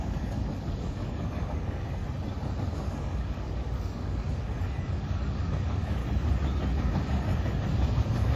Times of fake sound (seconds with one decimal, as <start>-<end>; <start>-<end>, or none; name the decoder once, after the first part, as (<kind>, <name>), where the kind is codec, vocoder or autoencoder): 0.0-2.0 (codec, DAC); 2.6-6.0; 6.8-8.4